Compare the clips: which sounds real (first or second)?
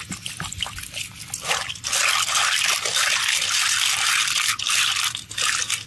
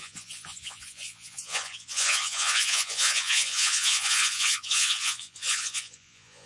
first